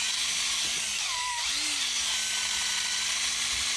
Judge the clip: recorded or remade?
recorded